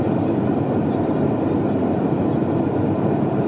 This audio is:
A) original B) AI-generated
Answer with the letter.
A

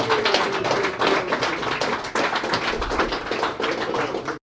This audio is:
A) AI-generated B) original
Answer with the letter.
B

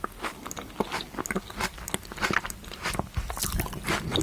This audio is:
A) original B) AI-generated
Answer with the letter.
A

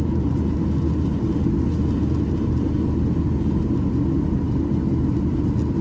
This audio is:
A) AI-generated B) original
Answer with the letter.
B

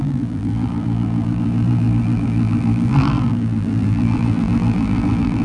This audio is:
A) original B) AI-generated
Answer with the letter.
B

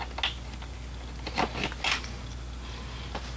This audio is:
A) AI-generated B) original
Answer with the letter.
B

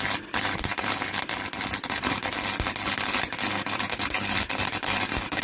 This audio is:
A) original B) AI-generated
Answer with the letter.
A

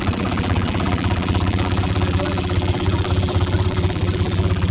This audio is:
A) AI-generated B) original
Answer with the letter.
A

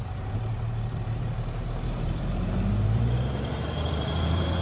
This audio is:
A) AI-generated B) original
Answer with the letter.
A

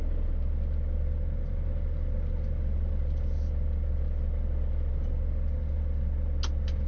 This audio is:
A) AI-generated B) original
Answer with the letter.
B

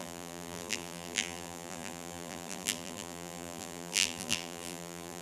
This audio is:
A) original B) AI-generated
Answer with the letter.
B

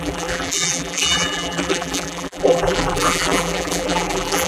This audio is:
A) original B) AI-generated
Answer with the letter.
B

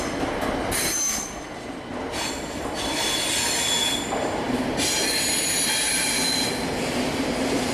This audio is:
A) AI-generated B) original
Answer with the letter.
B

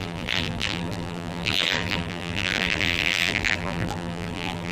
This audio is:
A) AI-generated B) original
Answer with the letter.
A